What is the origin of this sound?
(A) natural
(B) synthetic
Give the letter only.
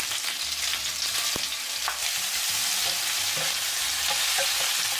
A